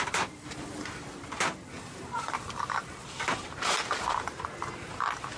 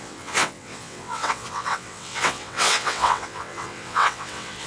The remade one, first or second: second